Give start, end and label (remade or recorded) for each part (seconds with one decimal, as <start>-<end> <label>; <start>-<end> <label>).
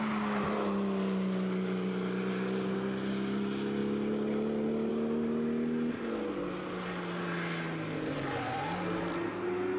0.0-9.8 recorded